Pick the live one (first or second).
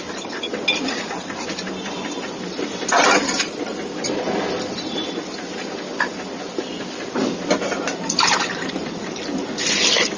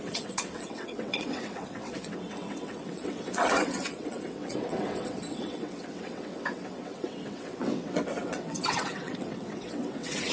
first